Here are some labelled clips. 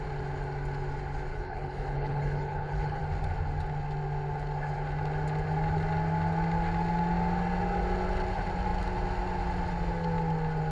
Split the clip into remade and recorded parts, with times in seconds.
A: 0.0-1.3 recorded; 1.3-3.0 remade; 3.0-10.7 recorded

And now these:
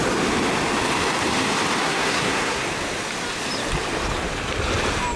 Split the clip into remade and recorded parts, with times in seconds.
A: 0.0-1.8 recorded; 1.8-2.6 remade; 2.6-5.2 recorded